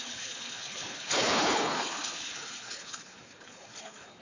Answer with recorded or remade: remade